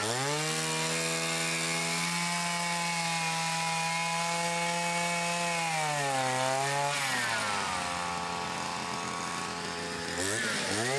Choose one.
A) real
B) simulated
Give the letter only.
A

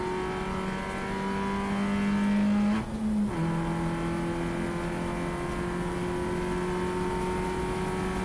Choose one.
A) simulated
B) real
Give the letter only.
B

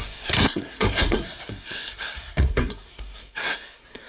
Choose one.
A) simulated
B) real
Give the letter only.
A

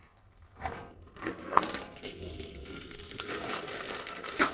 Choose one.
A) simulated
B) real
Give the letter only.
A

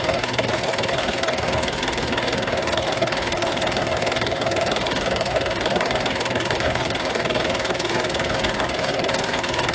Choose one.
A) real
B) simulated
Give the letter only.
B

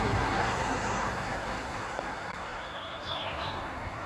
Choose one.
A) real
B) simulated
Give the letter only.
B